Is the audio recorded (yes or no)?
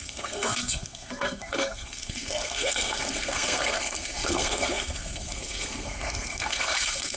no